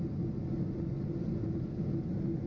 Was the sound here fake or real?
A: real